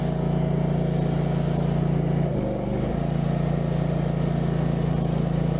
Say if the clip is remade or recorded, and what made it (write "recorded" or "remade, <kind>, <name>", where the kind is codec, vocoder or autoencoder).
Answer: recorded